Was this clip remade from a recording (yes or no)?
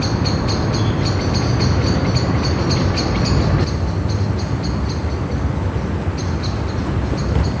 no